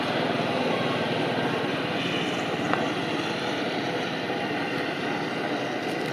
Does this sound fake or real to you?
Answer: real